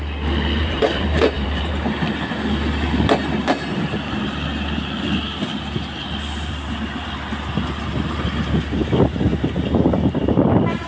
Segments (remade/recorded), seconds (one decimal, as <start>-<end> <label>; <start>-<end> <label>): 0.0-0.6 recorded; 0.6-2.1 remade; 2.1-8.8 recorded; 8.8-10.5 remade; 10.5-10.9 recorded